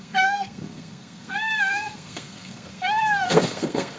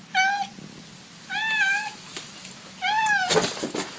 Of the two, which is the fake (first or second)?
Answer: first